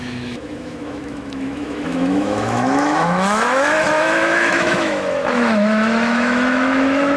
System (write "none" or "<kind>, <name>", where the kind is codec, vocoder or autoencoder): autoencoder, DAC-VAE